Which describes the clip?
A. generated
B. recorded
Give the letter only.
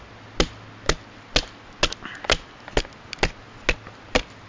B